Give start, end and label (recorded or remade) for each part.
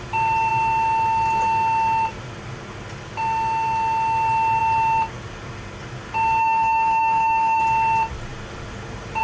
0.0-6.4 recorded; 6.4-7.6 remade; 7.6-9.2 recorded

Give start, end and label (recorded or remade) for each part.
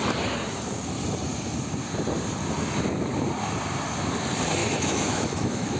0.0-4.6 recorded; 4.6-5.8 remade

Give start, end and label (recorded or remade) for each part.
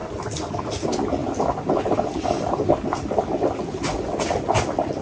0.0-5.0 recorded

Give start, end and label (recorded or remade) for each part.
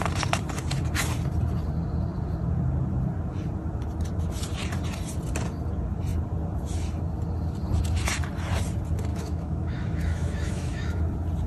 0.0-9.1 recorded; 9.1-11.0 remade; 11.0-11.5 recorded